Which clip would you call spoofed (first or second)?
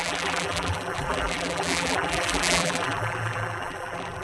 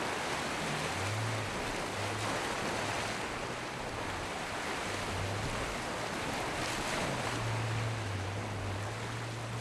first